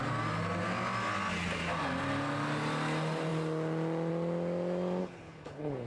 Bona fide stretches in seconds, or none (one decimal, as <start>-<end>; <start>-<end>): 0.0-5.0